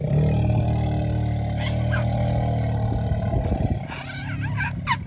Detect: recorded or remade recorded